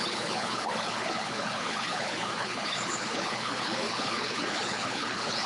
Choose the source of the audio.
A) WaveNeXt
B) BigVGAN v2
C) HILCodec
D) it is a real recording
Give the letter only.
C